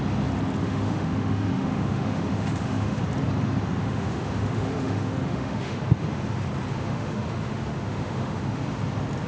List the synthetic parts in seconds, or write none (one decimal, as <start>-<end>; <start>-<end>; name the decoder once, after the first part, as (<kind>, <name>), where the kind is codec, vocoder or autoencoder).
0.6-3.0 (autoencoder, DAC-VAE); 3.8-5.8; 6.7-8.6